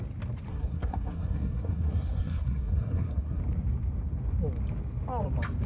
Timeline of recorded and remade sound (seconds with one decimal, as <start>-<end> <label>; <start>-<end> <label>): 0.0-0.5 recorded; 0.5-3.4 remade; 3.4-5.7 recorded